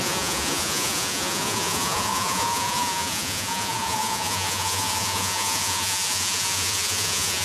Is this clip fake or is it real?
fake